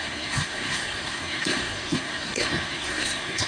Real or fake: fake